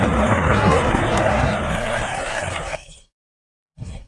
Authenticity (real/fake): fake